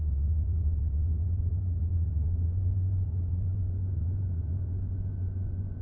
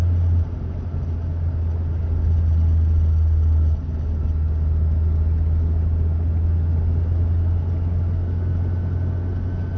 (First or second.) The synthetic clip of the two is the first